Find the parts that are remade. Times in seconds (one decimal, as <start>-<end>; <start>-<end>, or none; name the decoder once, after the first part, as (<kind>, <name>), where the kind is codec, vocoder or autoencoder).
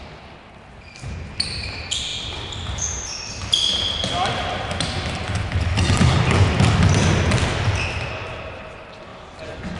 none